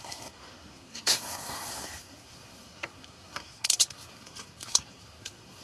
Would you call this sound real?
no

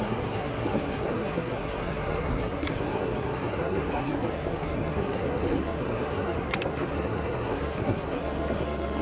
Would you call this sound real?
no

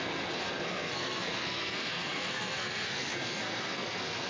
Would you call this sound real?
no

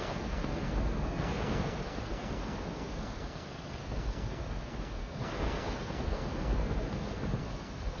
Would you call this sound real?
no